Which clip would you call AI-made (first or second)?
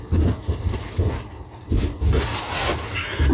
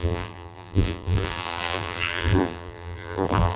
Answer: second